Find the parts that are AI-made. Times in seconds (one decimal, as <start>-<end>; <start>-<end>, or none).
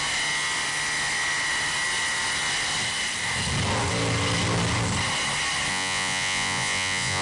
5.7-7.2